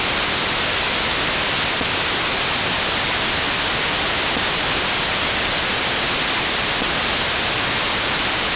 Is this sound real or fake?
real